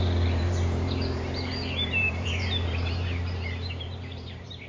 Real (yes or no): no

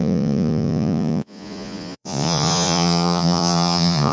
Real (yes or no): no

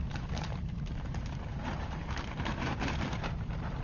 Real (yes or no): no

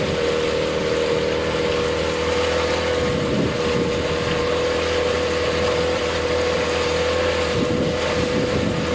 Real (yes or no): yes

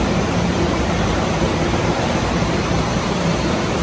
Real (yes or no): no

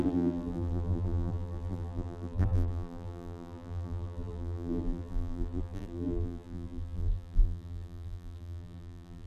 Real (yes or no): no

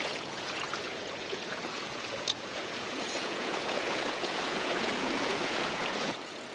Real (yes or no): no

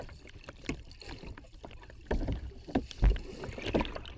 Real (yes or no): yes